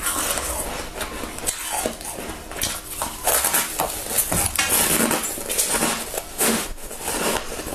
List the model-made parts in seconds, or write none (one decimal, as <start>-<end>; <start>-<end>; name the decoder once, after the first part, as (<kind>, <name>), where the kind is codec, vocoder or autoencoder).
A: 6.3-6.9 (autoencoder, DAC-VAE)